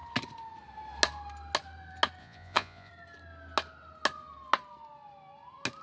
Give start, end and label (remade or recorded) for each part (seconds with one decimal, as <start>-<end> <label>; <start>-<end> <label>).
0.0-2.2 recorded; 2.2-2.9 remade; 2.9-5.8 recorded